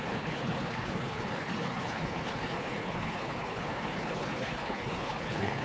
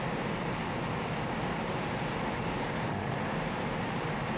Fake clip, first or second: first